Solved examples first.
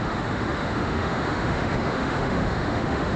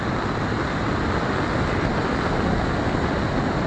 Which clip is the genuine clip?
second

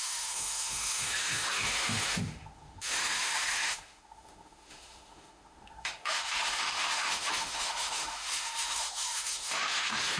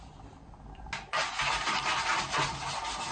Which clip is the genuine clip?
second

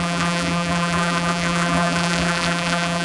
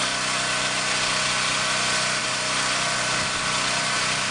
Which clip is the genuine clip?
second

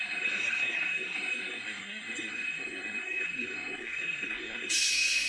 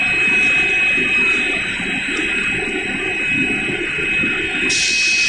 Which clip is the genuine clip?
second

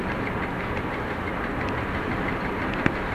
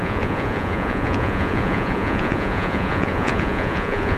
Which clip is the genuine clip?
first